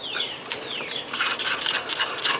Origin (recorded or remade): recorded